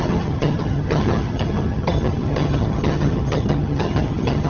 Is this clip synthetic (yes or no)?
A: yes